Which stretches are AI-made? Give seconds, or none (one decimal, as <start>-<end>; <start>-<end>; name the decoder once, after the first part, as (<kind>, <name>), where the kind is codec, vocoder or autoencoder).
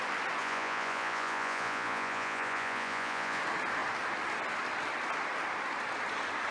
0.4-3.4 (vocoder, Vocos)